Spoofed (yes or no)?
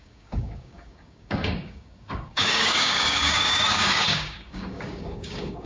yes